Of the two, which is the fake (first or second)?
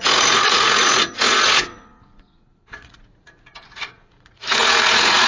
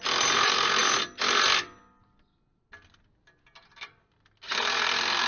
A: first